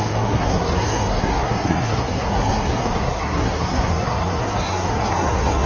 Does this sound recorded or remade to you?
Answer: remade